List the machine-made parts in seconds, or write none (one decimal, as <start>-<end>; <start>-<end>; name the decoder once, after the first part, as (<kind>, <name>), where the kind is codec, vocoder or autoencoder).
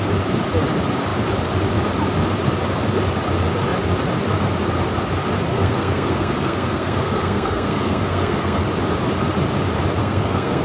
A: 5.5-8.6 (codec, SNAC); 10.0-10.6